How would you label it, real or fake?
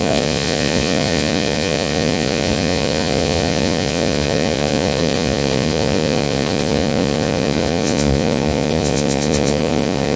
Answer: fake